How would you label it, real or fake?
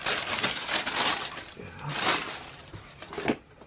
real